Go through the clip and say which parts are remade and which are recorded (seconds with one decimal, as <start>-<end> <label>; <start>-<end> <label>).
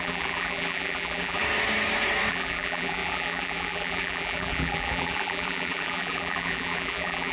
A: 0.0-1.4 remade; 1.4-2.3 recorded; 2.3-7.3 remade